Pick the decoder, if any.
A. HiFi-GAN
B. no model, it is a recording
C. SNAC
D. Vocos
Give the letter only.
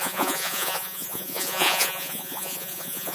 D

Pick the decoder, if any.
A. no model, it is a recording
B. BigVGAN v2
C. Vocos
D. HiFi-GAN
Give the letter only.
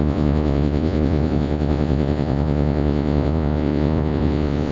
C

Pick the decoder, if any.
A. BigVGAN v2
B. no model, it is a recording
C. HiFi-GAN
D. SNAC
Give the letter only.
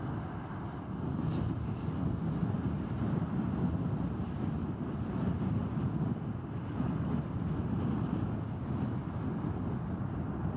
B